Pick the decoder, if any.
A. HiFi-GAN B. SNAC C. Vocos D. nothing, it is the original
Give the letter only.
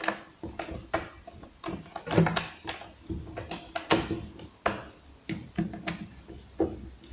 D